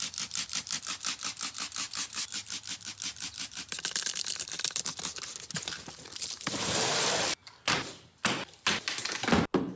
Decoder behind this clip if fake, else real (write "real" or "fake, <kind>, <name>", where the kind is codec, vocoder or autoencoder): real